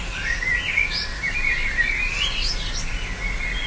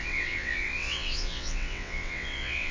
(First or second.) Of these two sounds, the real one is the first